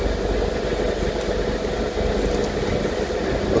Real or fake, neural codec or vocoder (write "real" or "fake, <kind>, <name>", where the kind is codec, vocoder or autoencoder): real